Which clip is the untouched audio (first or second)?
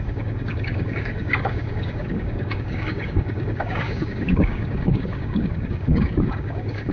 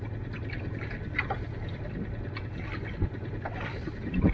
second